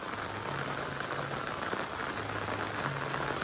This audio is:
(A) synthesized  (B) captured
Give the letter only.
B